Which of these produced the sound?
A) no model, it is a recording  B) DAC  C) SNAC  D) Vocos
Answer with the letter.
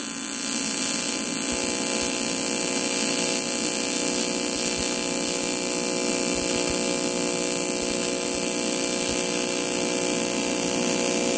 A